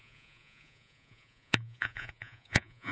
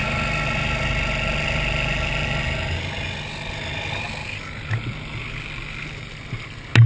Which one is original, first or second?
second